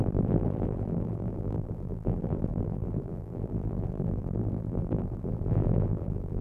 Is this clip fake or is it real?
fake